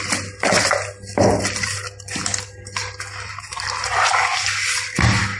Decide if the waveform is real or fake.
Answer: real